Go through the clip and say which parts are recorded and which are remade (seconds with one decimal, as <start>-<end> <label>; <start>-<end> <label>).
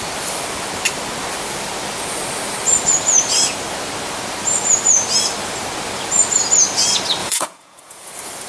0.0-7.2 recorded; 7.2-8.1 remade; 8.1-8.5 recorded